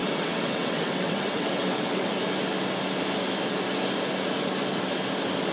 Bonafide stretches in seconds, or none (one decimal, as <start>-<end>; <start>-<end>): 2.1-5.5